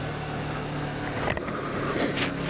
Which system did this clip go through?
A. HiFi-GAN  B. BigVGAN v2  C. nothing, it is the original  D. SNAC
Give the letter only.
C